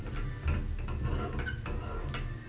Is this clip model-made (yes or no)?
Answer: no